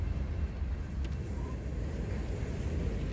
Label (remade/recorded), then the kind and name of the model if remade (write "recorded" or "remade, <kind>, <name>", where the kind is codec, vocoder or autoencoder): recorded